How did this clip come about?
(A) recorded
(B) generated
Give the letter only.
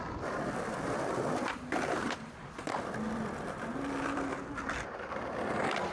B